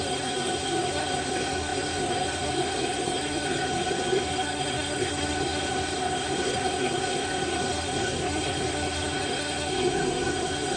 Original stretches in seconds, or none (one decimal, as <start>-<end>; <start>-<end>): none